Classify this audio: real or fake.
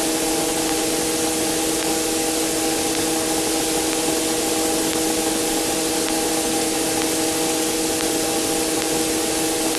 real